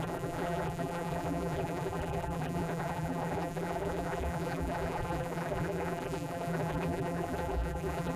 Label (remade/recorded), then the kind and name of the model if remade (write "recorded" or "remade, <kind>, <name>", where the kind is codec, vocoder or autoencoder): remade, vocoder, BigVGAN v2